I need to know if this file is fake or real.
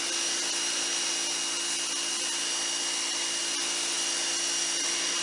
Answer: real